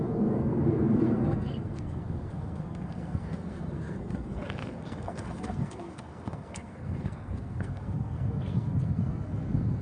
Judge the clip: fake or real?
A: fake